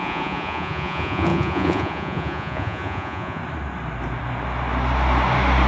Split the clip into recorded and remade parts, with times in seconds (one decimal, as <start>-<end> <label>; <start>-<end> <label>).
0.0-3.4 remade; 3.4-5.7 recorded